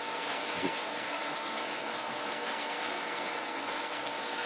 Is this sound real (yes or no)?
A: no